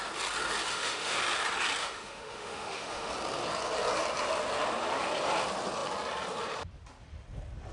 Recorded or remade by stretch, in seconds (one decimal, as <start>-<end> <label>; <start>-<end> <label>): 0.0-0.7 recorded; 0.7-1.2 remade; 1.2-1.8 recorded; 1.8-3.1 remade; 3.1-7.7 recorded